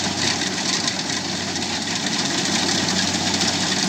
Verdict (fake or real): real